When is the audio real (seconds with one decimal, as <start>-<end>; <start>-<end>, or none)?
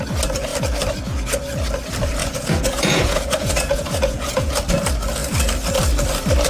0.0-2.2; 4.6-6.5